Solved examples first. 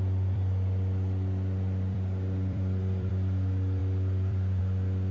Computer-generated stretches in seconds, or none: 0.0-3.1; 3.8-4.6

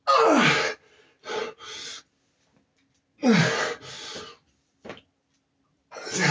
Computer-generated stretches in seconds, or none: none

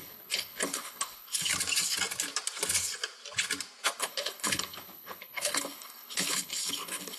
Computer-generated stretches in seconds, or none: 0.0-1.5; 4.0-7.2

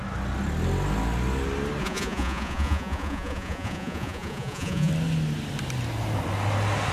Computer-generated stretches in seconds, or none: 1.8-4.9

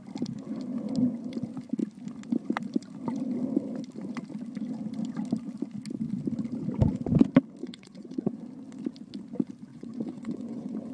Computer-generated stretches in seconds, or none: 7.6-8.4; 9.7-10.9

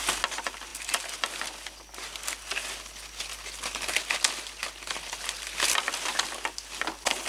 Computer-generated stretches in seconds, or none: none

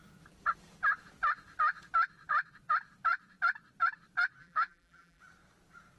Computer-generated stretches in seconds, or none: 4.4-5.2